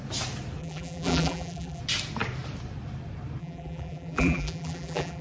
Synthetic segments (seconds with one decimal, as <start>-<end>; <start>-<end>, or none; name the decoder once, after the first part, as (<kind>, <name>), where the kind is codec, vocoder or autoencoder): 0.6-1.8 (vocoder, BigVGAN v2); 3.4-5.2